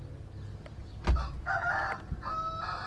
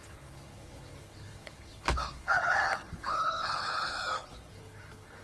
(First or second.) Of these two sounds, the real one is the first